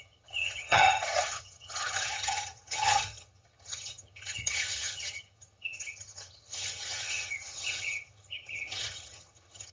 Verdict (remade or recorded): remade